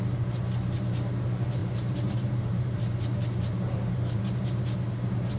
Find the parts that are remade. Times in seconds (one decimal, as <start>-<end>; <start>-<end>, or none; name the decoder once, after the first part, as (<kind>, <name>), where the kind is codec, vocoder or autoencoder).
1.6-4.2 (vocoder, BigVGAN v2)